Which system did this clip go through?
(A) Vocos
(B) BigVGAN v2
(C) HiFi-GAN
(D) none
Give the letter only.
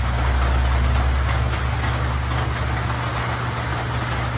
D